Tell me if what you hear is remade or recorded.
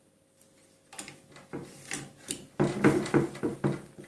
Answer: recorded